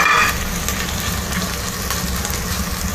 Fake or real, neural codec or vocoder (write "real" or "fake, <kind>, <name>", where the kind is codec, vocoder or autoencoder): real